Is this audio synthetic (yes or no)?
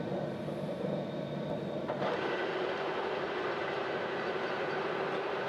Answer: yes